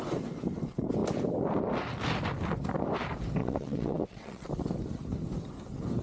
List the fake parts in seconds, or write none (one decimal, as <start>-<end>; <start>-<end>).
3.4-4.5